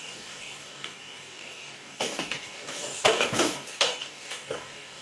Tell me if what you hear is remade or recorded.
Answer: remade